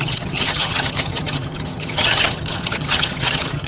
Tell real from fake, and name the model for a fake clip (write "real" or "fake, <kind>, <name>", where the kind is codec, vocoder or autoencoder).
fake, vocoder, HiFi-GAN